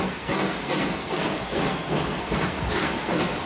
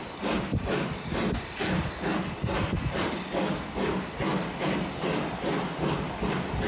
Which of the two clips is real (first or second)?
second